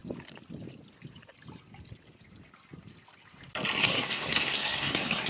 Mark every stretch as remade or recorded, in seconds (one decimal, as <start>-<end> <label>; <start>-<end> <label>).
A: 0.0-3.8 recorded; 3.8-5.3 remade